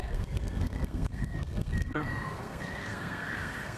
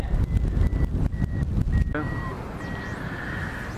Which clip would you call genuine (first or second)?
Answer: second